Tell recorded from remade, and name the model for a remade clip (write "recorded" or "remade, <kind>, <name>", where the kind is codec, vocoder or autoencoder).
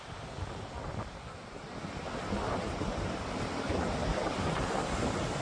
recorded